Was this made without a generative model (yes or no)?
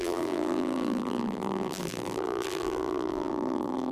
no